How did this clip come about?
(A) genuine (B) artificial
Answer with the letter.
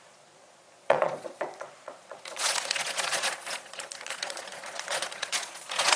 B